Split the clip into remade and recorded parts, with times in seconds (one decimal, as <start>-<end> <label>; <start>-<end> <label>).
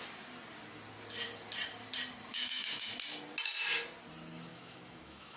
0.0-2.3 recorded; 2.3-2.9 remade; 2.9-4.5 recorded; 4.5-5.4 remade